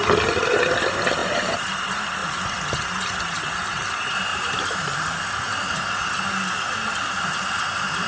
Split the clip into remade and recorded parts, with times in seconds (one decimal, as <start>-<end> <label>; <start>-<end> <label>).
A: 0.0-1.2 recorded; 1.2-1.8 remade; 1.8-8.1 recorded